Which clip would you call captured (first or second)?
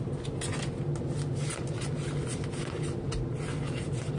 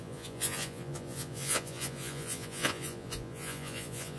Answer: first